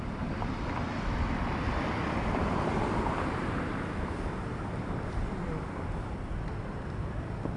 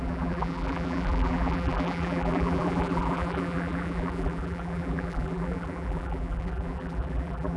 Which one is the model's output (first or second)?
second